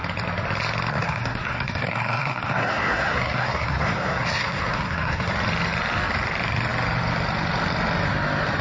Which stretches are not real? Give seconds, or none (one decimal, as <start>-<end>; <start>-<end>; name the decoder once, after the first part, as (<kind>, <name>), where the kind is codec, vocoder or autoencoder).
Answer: 0.9-5.3 (codec, SNAC)